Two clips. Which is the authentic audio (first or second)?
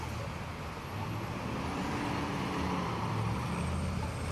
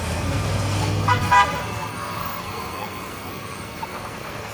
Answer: first